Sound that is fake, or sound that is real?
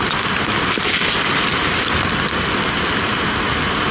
real